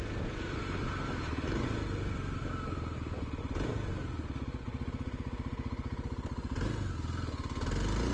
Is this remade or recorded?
recorded